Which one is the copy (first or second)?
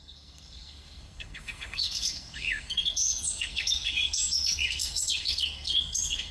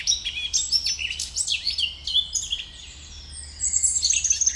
first